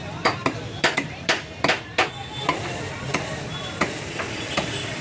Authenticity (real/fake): fake